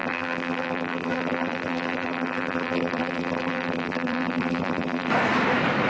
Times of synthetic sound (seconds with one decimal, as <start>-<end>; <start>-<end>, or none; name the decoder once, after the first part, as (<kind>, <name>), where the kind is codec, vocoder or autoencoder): 0.0-5.1 (vocoder, BigVGAN v2)